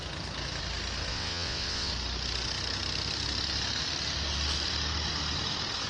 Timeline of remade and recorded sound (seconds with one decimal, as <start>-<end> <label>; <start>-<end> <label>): 0.0-1.1 recorded; 1.1-1.9 remade; 1.9-5.9 recorded

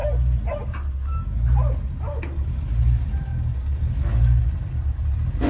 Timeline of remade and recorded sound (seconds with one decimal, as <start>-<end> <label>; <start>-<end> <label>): 0.0-2.0 recorded; 2.0-3.3 remade; 3.3-4.4 recorded; 4.4-5.5 remade

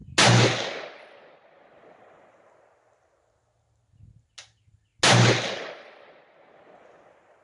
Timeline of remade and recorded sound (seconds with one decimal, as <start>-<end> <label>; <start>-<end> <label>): 0.0-7.4 recorded

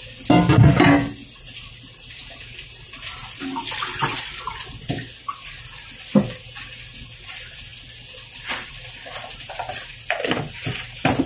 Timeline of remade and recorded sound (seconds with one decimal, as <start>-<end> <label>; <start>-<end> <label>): 0.0-7.7 recorded; 7.7-8.7 remade; 8.7-11.3 recorded